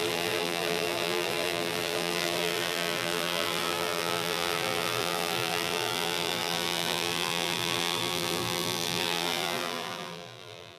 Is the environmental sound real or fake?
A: fake